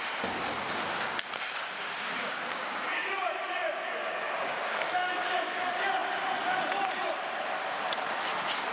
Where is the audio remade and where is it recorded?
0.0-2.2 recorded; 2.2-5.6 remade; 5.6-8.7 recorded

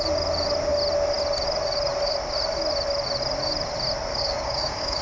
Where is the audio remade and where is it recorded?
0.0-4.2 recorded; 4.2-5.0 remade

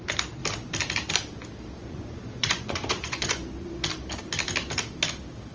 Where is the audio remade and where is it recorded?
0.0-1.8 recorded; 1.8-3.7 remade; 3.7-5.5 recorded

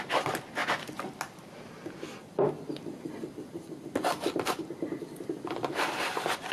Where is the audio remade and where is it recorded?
0.0-6.5 recorded